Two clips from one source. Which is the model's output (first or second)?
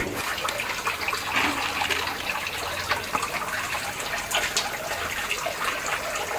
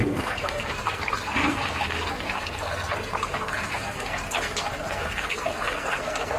second